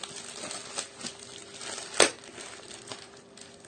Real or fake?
real